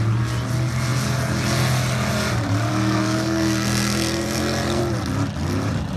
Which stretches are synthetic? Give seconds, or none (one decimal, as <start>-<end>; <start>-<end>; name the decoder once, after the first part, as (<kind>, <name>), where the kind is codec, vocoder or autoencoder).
2.7-4.8 (codec, SNAC)